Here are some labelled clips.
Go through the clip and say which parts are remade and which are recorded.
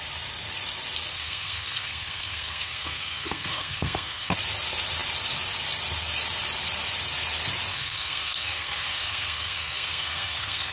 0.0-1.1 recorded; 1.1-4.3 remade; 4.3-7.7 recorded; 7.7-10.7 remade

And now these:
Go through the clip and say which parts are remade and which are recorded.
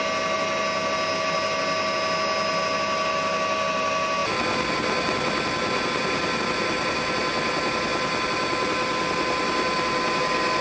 0.0-10.6 recorded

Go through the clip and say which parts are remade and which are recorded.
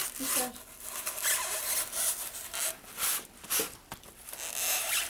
0.0-5.1 recorded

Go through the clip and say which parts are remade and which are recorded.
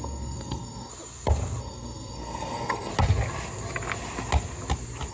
0.0-0.9 remade; 0.9-1.6 recorded; 1.6-2.9 remade; 2.9-5.1 recorded